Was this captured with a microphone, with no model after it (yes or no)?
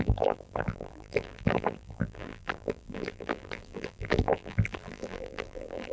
no